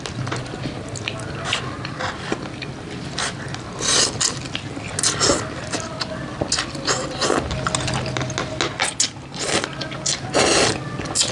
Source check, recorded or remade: recorded